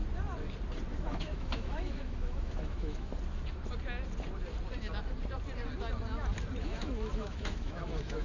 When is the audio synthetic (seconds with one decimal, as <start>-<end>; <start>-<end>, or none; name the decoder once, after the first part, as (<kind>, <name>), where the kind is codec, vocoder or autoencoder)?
0.9-3.1 (autoencoder, DAC-VAE); 6.6-8.2